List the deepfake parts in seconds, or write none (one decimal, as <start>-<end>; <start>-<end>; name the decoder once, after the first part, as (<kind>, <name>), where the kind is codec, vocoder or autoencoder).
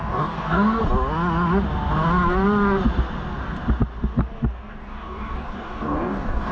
0.0-0.8 (codec, DAC); 4.7-6.5